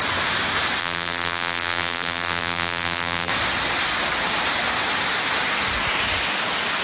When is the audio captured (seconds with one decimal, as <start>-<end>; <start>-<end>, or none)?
0.0-0.8; 3.3-6.8